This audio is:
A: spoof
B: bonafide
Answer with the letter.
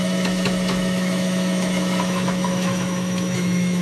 A